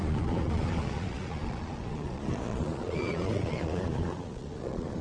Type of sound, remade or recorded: remade